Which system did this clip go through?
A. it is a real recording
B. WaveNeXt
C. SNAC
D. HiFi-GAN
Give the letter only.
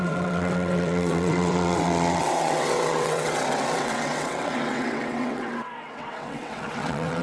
B